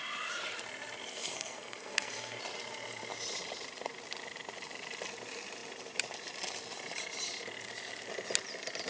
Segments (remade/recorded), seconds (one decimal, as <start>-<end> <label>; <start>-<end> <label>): 0.0-1.1 recorded; 1.1-2.4 remade; 2.4-8.9 recorded